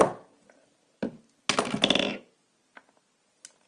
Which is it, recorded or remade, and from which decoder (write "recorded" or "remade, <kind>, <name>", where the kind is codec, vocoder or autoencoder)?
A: recorded